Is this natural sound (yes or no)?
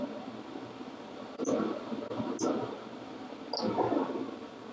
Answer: yes